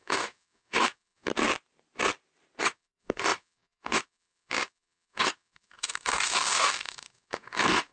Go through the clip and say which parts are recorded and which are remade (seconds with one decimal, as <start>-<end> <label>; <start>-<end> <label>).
0.0-1.3 remade; 1.3-2.6 recorded; 2.6-7.9 remade